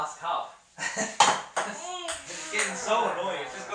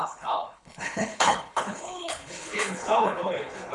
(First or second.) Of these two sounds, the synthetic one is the second